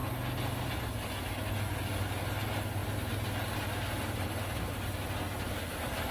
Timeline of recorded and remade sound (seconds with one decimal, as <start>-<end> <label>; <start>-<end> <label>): 0.0-6.1 recorded